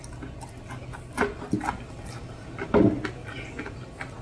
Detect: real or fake real